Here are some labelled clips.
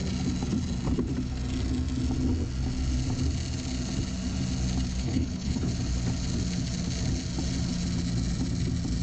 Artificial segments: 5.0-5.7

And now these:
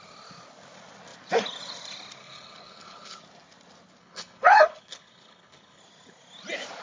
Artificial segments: 2.2-3.2; 4.0-5.8

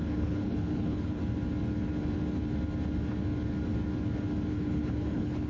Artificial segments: 0.0-1.2; 4.5-5.5